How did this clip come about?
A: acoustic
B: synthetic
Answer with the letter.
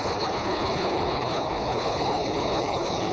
B